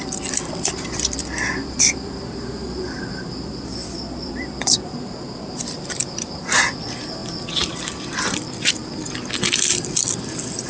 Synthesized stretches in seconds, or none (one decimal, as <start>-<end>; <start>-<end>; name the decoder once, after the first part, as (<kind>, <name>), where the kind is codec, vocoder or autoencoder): 0.0-10.7 (vocoder, BigVGAN v2)